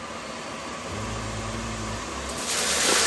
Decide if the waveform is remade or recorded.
recorded